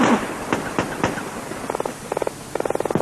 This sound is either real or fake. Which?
real